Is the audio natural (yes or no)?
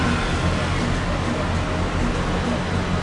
yes